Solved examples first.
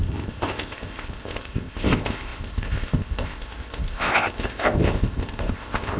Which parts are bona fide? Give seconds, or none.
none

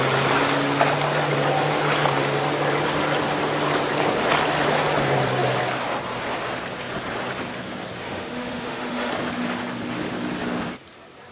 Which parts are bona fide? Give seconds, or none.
0.0-8.0; 9.1-11.3

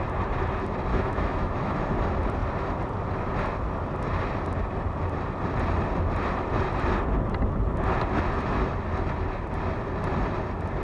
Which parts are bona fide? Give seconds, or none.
0.0-0.9; 1.8-10.8

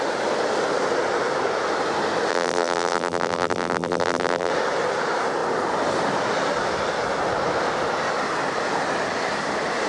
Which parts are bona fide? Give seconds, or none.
0.0-2.3; 4.5-9.9